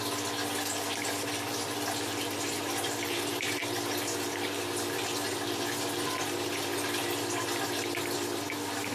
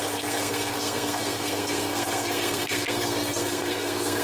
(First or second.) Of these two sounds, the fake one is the second